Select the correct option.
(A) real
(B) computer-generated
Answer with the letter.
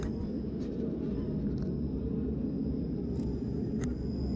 A